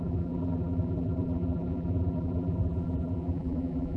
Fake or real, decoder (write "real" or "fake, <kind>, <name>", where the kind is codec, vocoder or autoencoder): fake, vocoder, BigVGAN v2